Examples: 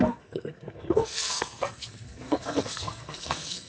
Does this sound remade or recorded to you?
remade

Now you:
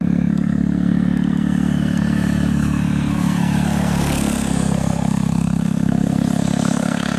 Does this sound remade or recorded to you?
remade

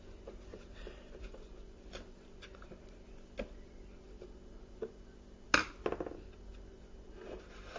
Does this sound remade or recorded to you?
recorded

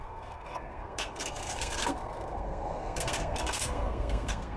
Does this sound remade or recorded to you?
remade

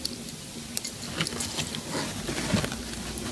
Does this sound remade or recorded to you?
recorded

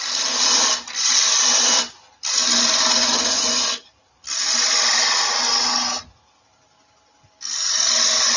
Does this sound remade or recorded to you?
recorded